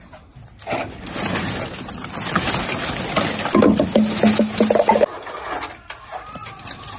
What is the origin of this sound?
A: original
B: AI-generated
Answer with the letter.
A